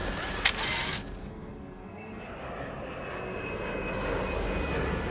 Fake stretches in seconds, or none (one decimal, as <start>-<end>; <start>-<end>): 1.2-2.2